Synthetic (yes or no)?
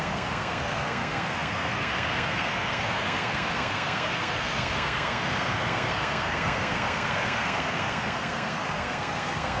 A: yes